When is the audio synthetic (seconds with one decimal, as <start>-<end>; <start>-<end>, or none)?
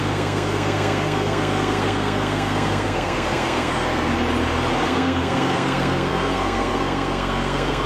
0.0-4.1; 4.7-7.9